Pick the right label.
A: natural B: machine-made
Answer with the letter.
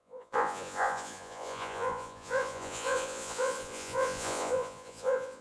B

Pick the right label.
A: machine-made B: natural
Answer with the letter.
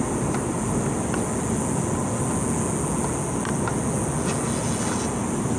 B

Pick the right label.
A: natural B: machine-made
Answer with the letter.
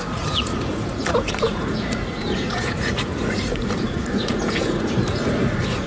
B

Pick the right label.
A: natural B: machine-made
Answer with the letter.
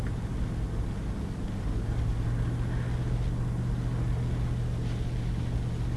A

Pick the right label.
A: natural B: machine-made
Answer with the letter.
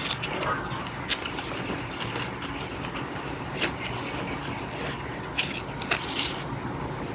A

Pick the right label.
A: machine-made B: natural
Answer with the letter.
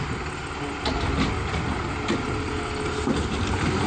B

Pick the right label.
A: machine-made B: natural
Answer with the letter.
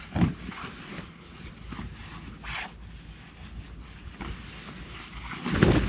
B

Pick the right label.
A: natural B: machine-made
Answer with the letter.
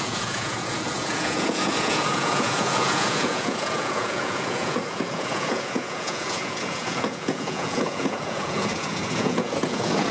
B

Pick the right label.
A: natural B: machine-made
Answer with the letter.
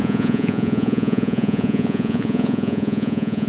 B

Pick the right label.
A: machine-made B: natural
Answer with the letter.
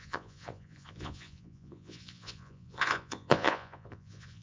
A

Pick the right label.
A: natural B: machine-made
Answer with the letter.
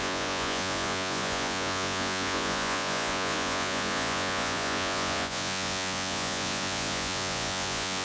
B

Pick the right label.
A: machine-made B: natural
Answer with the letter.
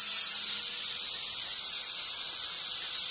B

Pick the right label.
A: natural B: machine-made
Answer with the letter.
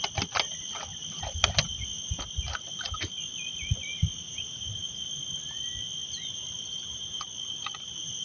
A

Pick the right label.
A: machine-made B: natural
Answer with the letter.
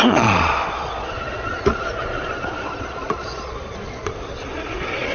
A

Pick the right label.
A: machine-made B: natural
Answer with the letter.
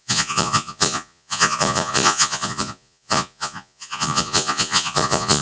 A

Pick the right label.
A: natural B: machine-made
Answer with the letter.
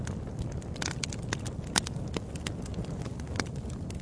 A